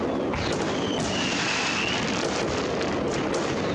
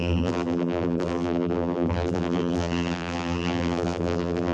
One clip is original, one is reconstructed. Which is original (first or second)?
first